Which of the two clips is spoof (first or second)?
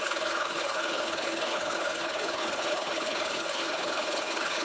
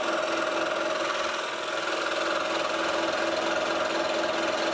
first